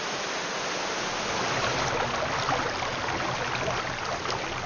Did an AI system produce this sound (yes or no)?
no